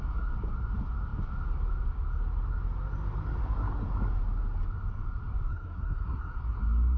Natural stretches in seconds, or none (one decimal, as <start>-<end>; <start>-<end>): 0.0-5.5; 6.6-7.0